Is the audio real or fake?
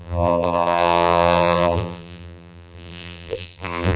fake